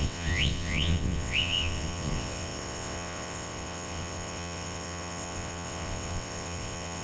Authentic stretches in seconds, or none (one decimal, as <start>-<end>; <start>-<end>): none